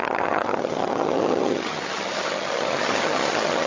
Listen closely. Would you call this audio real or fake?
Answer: fake